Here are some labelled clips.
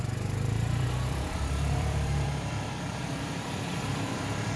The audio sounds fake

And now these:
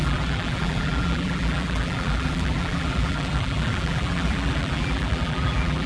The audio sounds fake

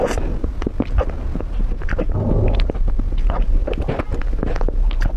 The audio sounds real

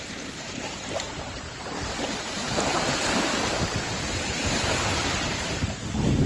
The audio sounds fake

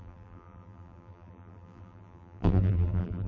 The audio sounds fake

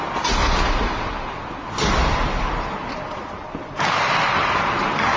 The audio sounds real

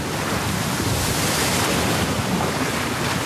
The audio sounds fake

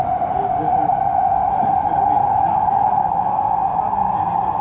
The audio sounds real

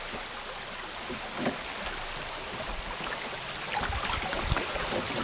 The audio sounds real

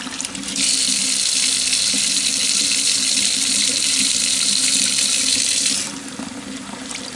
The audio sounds fake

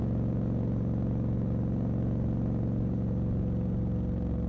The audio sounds real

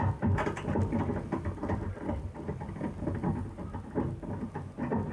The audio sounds fake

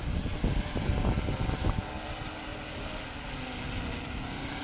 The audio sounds real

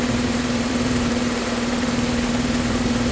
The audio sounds fake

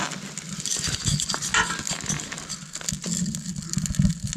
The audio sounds real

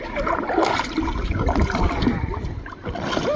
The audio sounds real